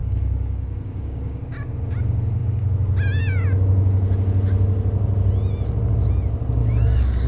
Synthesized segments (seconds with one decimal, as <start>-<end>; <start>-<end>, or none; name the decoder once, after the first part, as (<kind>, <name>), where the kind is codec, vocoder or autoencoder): 0.0-1.4 (codec, DAC); 6.6-7.3